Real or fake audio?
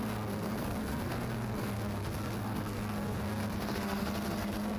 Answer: fake